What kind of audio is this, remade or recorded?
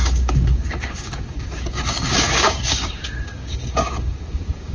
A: remade